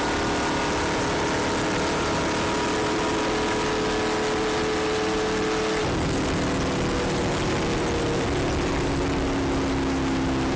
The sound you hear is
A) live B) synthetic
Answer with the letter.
A